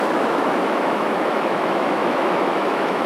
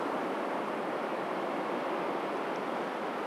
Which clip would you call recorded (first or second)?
second